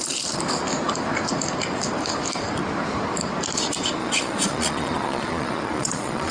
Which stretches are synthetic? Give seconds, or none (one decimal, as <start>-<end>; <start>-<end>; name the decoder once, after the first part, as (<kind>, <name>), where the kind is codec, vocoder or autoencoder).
4.0-6.3 (vocoder, Vocos)